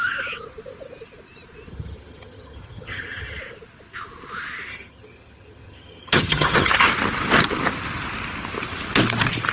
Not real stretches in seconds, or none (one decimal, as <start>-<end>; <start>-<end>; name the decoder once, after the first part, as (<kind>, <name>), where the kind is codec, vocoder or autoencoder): 1.7-3.4 (vocoder, HiFi-GAN); 4.7-6.8